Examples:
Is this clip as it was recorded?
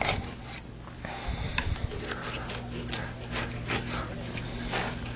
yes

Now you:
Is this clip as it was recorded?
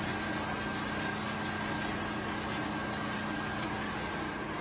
yes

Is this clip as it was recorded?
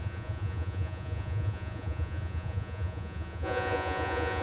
no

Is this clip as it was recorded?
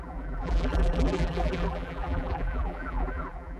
no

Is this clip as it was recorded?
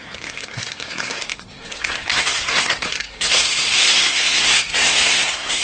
no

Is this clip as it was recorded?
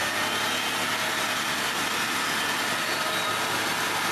yes